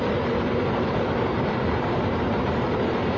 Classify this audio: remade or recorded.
remade